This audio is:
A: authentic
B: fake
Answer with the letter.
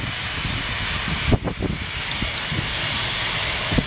A